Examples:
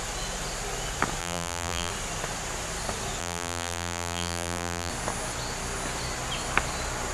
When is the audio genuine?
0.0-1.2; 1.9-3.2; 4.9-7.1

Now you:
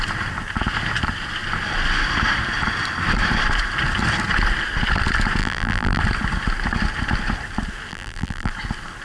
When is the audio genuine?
0.0-5.4; 6.0-7.9; 8.5-9.0

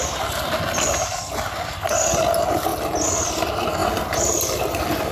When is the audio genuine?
0.0-3.8

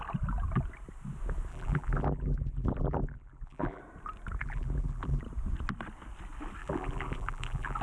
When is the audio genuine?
0.0-1.5; 3.8-4.4; 5.2-6.6

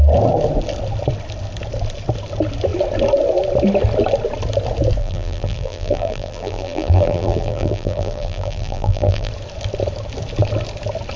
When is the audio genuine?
0.0-5.0; 9.3-11.2

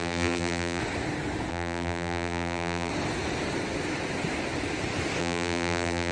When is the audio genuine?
0.8-1.5; 2.9-5.2

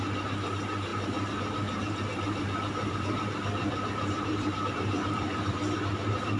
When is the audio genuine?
none

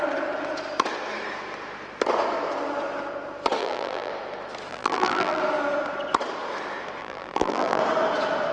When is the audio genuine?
0.0-3.6; 4.1-4.7; 5.4-7.0; 7.8-8.5